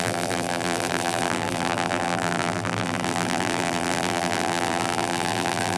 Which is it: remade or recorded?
remade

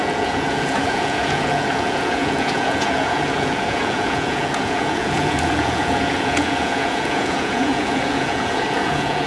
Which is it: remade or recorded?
remade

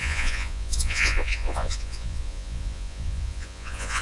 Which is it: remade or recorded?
remade